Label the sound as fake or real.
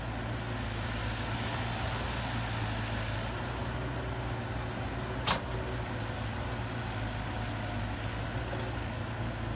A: real